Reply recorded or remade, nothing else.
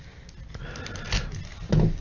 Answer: recorded